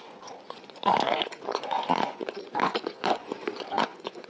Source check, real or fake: fake